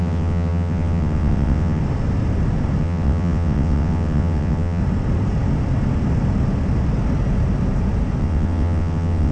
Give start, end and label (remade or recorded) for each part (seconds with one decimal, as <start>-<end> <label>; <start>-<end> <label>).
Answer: 0.0-1.8 remade; 1.8-2.8 recorded; 2.8-4.8 remade; 4.8-8.2 recorded; 8.2-9.3 remade